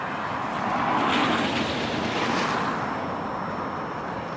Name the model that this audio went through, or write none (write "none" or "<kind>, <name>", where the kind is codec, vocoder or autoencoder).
none